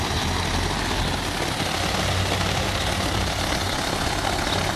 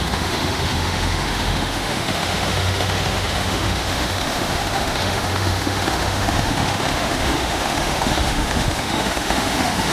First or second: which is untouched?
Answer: first